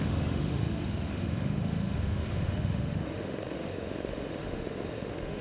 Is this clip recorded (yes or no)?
no